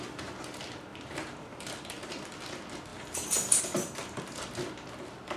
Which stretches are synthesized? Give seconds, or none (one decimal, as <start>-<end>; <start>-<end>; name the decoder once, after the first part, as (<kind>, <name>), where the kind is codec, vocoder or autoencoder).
0.9-1.7 (vocoder, BigVGAN v2); 2.9-3.6